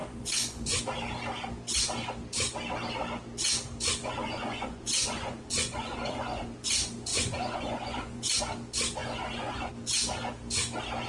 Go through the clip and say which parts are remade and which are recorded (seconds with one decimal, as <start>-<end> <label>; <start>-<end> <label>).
0.0-0.8 remade; 0.8-4.0 recorded; 4.0-6.4 remade; 6.4-7.1 recorded; 7.1-8.4 remade; 8.4-9.0 recorded; 9.0-9.7 remade; 9.7-11.1 recorded